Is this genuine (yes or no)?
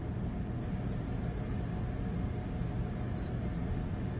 yes